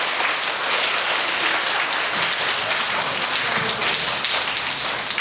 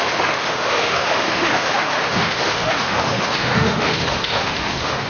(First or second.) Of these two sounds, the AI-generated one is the second